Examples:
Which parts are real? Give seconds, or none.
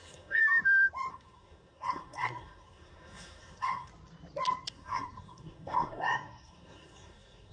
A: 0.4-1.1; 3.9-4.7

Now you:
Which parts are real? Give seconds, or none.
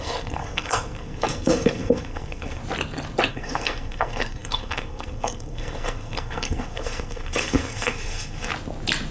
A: 2.6-3.3; 8.5-9.1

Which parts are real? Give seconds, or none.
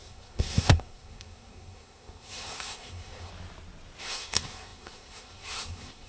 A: 3.3-4.0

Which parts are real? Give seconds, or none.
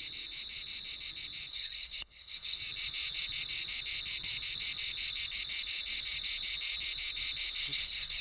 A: 0.0-1.5; 2.6-7.6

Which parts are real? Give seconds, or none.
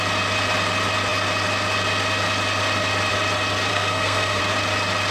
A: 0.0-3.7; 4.4-5.1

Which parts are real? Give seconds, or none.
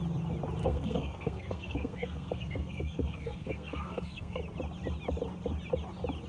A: 0.0-0.6; 4.4-6.3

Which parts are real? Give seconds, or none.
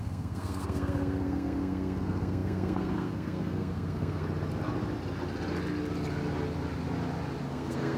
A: 4.2-7.5